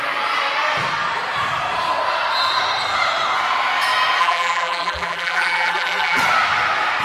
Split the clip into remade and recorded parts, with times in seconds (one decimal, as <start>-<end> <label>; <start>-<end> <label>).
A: 0.0-4.2 recorded; 4.2-6.2 remade; 6.2-7.0 recorded